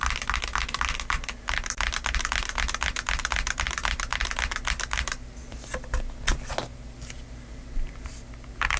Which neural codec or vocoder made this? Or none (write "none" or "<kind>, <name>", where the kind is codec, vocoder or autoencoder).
none